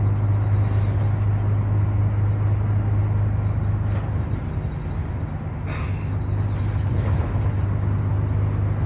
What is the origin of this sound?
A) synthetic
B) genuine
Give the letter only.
B